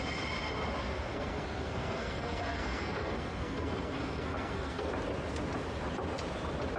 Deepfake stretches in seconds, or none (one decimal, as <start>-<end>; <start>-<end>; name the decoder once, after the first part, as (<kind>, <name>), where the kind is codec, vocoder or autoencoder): 0.8-4.9 (codec, SNAC)